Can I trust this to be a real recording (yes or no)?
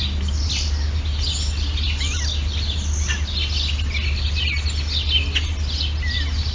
yes